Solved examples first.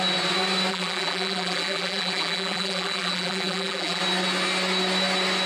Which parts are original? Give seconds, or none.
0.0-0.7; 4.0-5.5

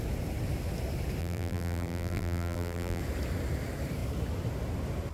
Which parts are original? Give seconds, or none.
0.0-1.2; 3.0-5.1

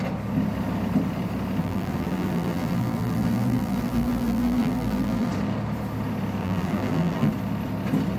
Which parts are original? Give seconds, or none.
0.0-1.6; 5.3-6.4; 7.3-8.2

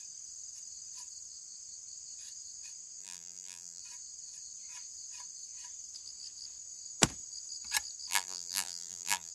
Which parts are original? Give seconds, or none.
0.0-3.0; 3.8-8.1

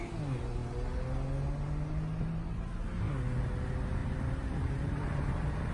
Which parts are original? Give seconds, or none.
0.0-4.0; 5.3-5.7

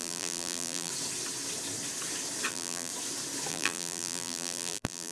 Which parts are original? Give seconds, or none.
0.9-2.5; 2.9-3.5

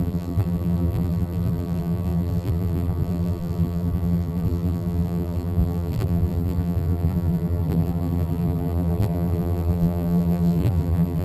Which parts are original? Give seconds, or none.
none

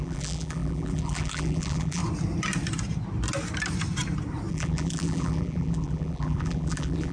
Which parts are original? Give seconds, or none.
2.0-4.5